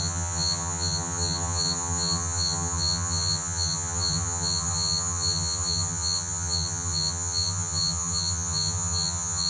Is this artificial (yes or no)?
yes